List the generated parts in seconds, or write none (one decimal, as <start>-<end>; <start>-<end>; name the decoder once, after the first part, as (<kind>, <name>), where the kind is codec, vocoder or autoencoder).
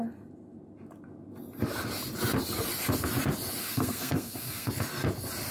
3.6-4.7 (codec, SNAC)